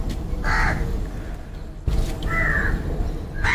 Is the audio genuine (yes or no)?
yes